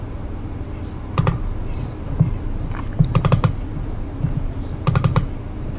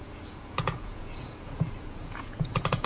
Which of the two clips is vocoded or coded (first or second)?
second